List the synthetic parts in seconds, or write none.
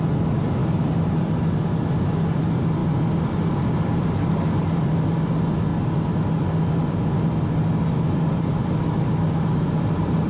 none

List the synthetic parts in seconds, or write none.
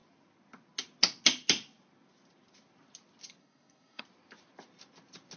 3.4-4.0 (codec, SNAC)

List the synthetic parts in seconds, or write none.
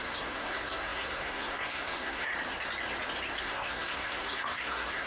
0.0-2.3 (codec, SNAC); 3.4-5.1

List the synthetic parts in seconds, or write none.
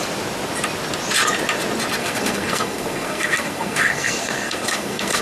2.0-5.2 (codec, SNAC)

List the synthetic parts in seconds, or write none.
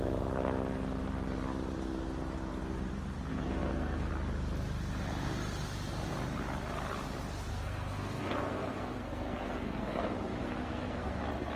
3.3-4.1 (codec, SNAC); 7.5-11.2